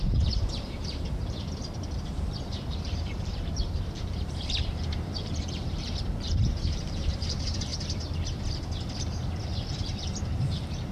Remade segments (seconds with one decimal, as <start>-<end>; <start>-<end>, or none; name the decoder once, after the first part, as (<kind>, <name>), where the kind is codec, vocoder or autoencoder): 0.0-7.7 (vocoder, BigVGAN v2); 9.4-10.9